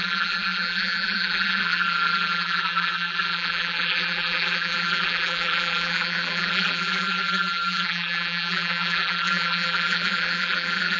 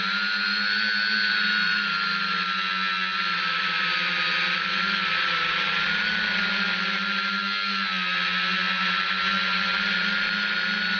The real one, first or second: second